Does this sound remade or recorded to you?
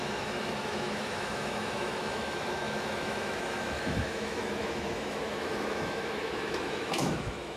remade